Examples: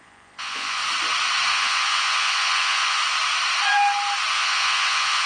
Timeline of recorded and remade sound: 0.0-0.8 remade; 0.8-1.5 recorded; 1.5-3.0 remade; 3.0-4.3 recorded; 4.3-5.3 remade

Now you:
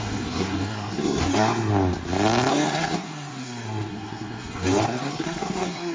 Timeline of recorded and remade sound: 0.0-1.7 remade; 1.7-2.5 recorded; 2.5-5.9 remade

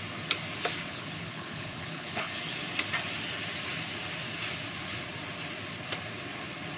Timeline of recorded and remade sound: 0.0-0.9 recorded; 0.9-2.4 remade; 2.4-6.8 recorded

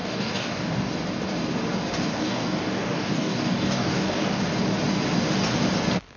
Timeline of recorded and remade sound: 0.0-0.9 remade; 0.9-2.1 recorded; 2.1-4.4 remade; 4.4-6.2 recorded

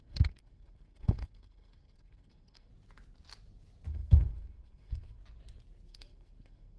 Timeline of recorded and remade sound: 0.0-2.7 remade; 2.7-3.9 recorded; 3.9-5.2 remade; 5.2-5.9 recorded; 5.9-6.8 remade

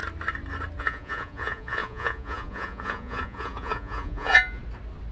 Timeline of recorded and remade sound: 0.0-0.8 recorded; 0.8-4.6 remade; 4.6-5.1 recorded

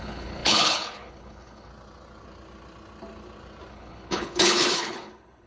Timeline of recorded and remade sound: 0.0-1.7 remade; 1.7-3.7 recorded; 3.7-5.5 remade

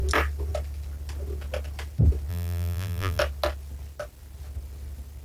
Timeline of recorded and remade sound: 0.0-2.3 recorded; 2.3-3.2 remade; 3.2-5.2 recorded